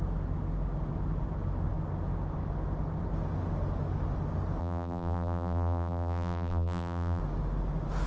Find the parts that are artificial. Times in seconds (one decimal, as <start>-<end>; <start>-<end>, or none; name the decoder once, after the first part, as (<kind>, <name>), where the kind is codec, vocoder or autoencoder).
4.6-7.2 (vocoder, BigVGAN v2)